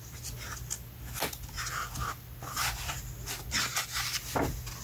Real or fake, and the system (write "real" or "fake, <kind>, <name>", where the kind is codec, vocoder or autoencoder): real